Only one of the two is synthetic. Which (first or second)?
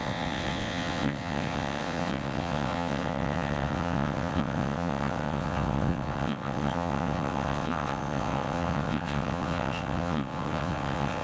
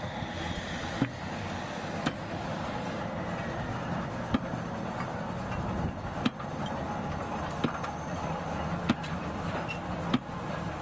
first